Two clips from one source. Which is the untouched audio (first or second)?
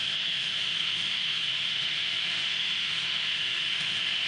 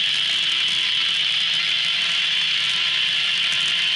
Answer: second